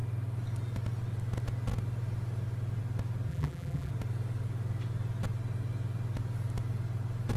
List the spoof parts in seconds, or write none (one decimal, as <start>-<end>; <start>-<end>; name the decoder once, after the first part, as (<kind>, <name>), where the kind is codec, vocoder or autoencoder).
3.3-3.9 (vocoder, BigVGAN v2)